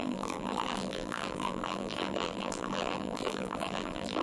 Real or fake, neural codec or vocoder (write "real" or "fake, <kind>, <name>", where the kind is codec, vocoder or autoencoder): fake, vocoder, BigVGAN v2